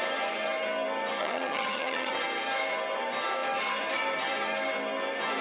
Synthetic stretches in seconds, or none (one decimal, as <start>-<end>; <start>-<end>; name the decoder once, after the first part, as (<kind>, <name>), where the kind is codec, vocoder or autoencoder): 1.2-2.1 (vocoder, HiFi-GAN)